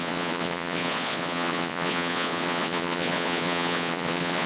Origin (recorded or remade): remade